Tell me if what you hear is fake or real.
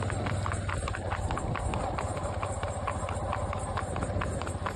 real